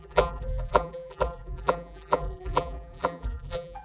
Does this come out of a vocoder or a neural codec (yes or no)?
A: yes